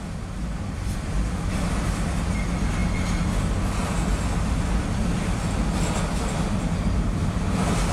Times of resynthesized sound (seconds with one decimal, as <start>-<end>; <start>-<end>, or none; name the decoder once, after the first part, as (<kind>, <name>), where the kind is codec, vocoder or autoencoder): none

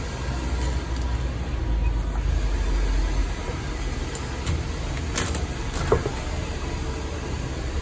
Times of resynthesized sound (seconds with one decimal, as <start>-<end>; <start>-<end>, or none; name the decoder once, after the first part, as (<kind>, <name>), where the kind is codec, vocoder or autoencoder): 3.2-4.0 (vocoder, BigVGAN v2); 6.0-6.7